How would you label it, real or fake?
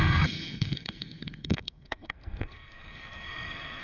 fake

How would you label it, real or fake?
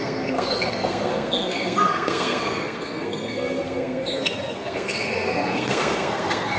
fake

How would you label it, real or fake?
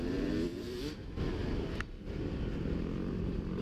real